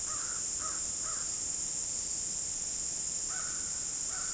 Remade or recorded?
recorded